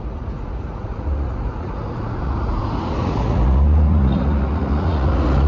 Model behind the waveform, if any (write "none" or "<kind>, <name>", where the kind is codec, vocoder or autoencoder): vocoder, Vocos